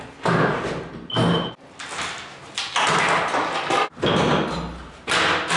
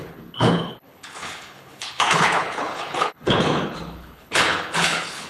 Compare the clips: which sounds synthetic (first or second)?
second